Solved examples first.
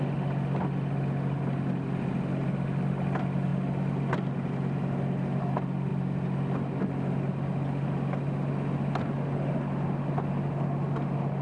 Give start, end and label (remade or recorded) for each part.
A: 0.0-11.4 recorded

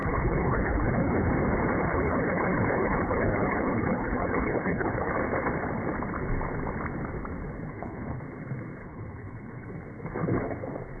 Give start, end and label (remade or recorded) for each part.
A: 0.0-1.3 remade; 1.3-1.8 recorded; 1.8-5.1 remade; 5.1-7.7 recorded; 7.7-8.2 remade; 8.2-8.8 recorded; 8.8-9.7 remade; 9.7-11.0 recorded